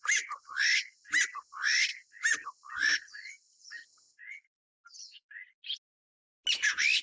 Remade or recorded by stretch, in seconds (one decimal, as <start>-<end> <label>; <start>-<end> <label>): 0.0-7.0 recorded